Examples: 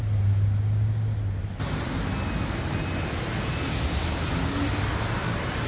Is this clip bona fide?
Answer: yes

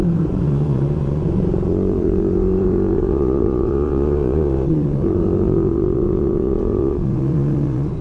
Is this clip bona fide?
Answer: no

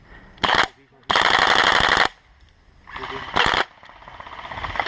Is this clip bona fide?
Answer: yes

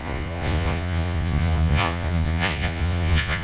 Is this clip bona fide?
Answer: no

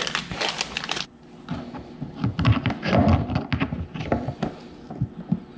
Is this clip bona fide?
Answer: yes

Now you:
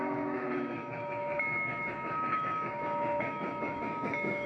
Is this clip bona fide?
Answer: no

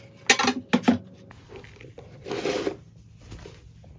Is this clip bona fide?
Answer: yes